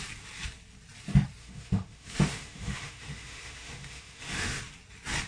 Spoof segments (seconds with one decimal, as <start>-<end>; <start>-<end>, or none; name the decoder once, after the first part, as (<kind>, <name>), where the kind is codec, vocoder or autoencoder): 1.4-4.6 (autoencoder, DAC-VAE)